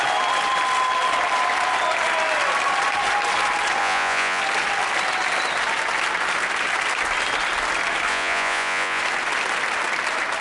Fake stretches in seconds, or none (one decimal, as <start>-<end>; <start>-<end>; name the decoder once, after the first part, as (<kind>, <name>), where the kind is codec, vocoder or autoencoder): 3.8-4.4 (vocoder, Vocos); 8.1-9.0

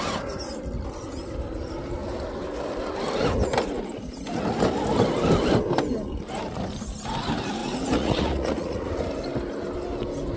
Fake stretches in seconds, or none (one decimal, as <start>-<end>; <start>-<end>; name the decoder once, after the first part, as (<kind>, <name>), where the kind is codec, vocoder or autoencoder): 7.6-8.9 (vocoder, Vocos)

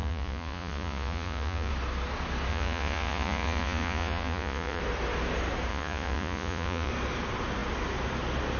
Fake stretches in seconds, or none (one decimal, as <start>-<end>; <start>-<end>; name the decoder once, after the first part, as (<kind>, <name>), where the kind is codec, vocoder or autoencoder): 0.0-1.7 (vocoder, Vocos); 2.5-4.8; 5.7-6.9

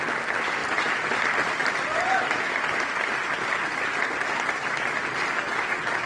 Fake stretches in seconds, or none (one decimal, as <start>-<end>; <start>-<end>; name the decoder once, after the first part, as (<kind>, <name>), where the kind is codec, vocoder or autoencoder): none

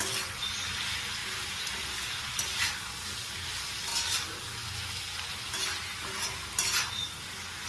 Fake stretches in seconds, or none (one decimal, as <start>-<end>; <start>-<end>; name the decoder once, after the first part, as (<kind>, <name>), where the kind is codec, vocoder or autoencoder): 1.2-2.3 (vocoder, Vocos)

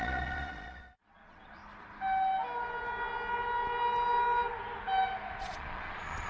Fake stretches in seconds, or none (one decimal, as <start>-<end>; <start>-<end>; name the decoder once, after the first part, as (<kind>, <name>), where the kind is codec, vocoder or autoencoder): 0.0-1.6 (vocoder, Vocos); 5.4-6.3

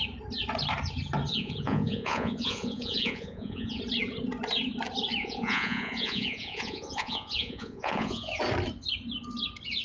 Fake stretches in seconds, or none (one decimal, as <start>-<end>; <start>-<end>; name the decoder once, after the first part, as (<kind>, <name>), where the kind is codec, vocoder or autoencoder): 1.3-3.8 (vocoder, Vocos); 5.2-8.3

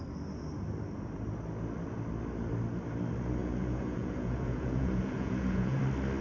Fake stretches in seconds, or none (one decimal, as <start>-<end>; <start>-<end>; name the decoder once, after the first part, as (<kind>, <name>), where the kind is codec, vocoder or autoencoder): 3.4-5.8 (vocoder, Vocos)